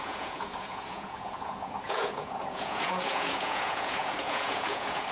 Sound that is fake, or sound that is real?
fake